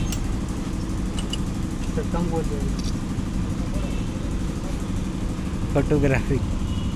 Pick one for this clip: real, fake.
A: real